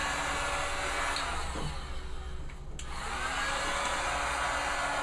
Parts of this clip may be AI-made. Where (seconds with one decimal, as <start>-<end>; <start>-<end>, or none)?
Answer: none